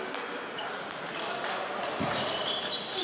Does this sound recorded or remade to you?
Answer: recorded